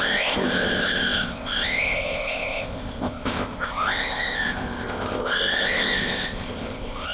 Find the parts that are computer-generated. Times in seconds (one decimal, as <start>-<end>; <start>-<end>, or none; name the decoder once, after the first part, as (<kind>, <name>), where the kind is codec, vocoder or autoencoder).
0.0-7.1 (codec, ZipCodec)